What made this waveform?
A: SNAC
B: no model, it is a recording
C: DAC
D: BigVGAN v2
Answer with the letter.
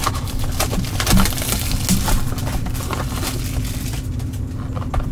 B